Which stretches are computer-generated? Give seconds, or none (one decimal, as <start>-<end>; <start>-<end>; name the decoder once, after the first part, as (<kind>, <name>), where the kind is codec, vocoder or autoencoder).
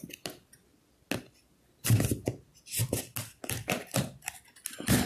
none